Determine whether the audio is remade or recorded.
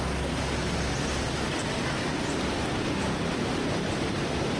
recorded